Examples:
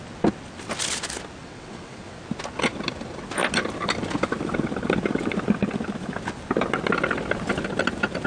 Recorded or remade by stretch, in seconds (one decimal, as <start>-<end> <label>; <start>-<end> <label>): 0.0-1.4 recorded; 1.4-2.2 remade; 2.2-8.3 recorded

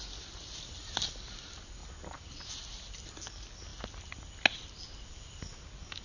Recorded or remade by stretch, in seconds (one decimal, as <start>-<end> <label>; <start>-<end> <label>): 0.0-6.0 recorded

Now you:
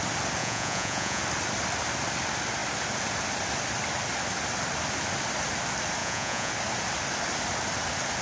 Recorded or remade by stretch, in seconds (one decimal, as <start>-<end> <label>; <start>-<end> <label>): 0.0-0.4 recorded; 0.4-1.2 remade; 1.2-6.0 recorded; 6.0-6.5 remade; 6.5-8.2 recorded